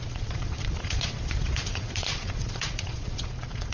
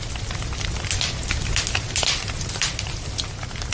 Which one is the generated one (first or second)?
first